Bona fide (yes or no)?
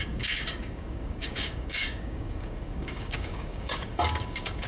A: no